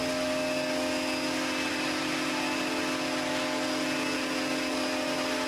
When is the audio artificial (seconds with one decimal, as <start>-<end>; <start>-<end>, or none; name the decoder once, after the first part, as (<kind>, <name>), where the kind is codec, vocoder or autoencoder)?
none